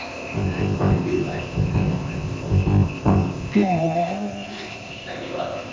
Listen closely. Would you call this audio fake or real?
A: fake